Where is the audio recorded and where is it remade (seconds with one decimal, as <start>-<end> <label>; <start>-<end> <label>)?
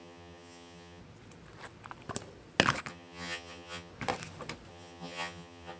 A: 0.0-1.0 remade; 1.0-2.9 recorded; 2.9-3.9 remade; 3.9-4.7 recorded; 4.7-5.8 remade